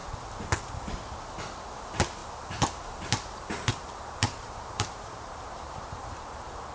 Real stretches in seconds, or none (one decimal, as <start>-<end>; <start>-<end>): 0.0-2.2; 6.0-6.7